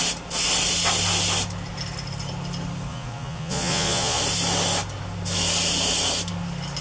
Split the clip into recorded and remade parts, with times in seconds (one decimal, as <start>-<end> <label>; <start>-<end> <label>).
0.0-2.9 recorded; 2.9-4.2 remade; 4.2-6.8 recorded